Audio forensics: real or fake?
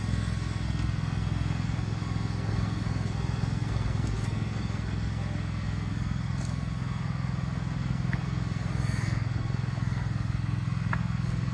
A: fake